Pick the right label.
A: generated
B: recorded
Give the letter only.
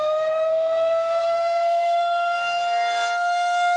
A